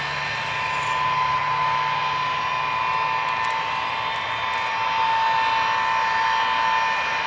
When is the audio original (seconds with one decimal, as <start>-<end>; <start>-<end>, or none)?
0.0-7.3